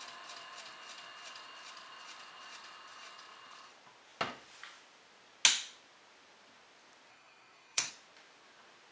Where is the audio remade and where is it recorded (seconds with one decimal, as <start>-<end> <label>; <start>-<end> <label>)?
0.0-7.1 recorded; 7.1-7.9 remade; 7.9-8.9 recorded